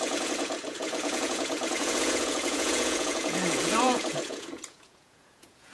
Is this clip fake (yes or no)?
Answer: yes